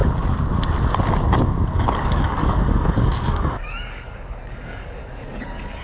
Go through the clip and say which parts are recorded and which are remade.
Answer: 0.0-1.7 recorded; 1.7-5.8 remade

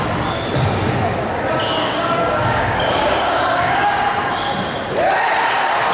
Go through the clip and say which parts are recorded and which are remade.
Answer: 0.0-1.6 recorded; 1.6-4.0 remade; 4.0-5.9 recorded

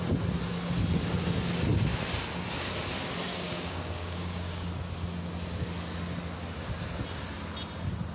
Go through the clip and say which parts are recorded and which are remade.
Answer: 0.0-3.3 recorded; 3.3-4.7 remade; 4.7-8.1 recorded

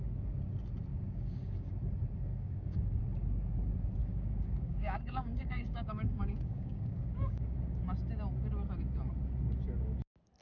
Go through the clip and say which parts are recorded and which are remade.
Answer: 0.0-0.9 recorded; 0.9-1.7 remade; 1.7-2.3 recorded; 2.3-3.0 remade; 3.0-4.0 recorded; 4.0-7.8 remade; 7.8-10.4 recorded

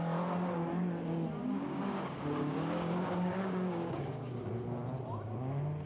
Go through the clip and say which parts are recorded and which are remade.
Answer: 0.0-1.4 recorded; 1.4-4.3 remade; 4.3-5.9 recorded

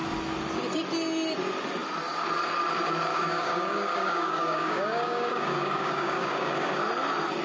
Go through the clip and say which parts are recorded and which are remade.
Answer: 0.0-3.1 recorded; 3.1-6.8 remade; 6.8-7.4 recorded

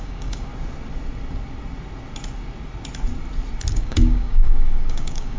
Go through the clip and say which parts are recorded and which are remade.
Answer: 0.0-0.5 remade; 0.5-3.7 recorded; 3.7-5.4 remade